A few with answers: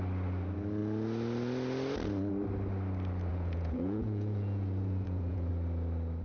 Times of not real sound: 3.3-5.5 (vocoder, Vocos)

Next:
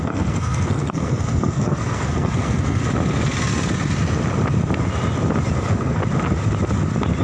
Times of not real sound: 0.0-2.8 (codec, SNAC); 5.6-6.0

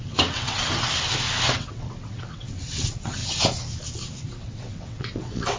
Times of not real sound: 0.0-0.6 (vocoder, WaveNeXt); 1.5-3.2; 4.3-5.6